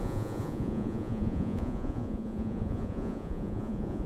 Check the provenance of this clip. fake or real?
fake